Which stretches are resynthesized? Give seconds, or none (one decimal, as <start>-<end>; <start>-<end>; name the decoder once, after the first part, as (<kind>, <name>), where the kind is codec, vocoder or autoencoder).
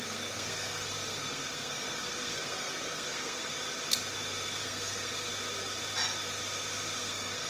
0.0-3.5 (codec, SNAC); 4.6-5.3; 7.0-7.5